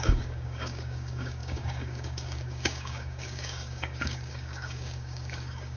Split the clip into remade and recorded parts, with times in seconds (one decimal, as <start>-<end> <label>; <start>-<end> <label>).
0.0-5.8 remade